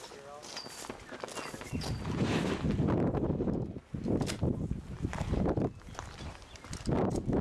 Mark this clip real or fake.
real